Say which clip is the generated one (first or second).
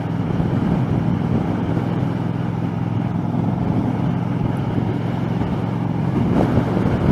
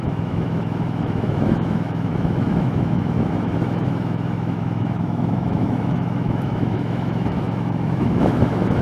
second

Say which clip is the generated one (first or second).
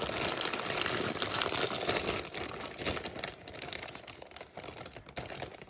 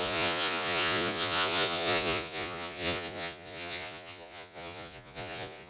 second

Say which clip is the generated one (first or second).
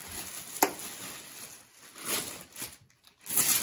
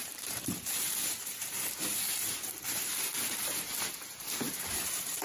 second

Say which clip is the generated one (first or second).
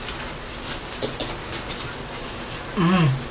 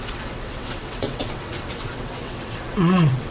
second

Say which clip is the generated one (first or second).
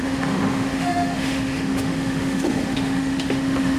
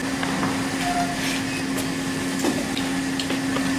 first